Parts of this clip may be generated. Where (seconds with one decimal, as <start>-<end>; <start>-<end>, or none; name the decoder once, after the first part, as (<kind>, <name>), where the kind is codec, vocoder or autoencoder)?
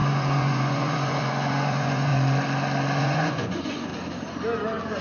0.0-2.1 (vocoder, Vocos); 3.0-3.9